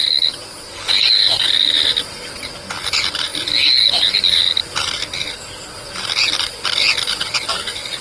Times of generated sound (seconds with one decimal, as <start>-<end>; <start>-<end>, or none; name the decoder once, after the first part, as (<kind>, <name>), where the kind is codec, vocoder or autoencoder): none